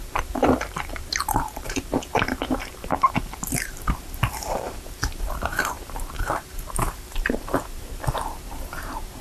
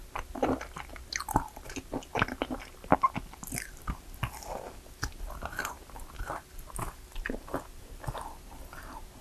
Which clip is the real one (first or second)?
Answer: second